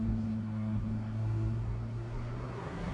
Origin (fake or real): fake